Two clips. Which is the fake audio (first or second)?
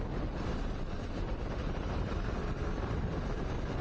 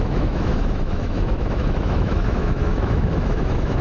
second